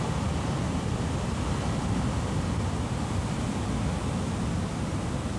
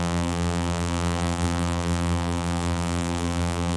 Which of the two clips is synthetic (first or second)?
second